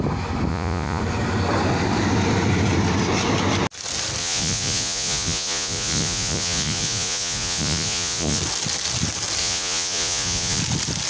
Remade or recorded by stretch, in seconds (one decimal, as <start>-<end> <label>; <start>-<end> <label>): 0.0-0.5 recorded; 0.5-1.0 remade; 1.0-4.2 recorded; 4.2-8.4 remade; 8.4-9.4 recorded; 9.4-10.6 remade; 10.6-11.1 recorded